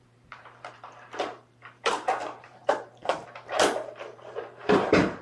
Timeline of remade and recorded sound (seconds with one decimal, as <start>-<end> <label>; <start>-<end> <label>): 0.0-5.2 remade